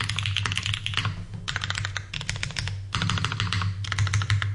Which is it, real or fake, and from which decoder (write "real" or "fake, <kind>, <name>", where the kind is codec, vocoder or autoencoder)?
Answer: real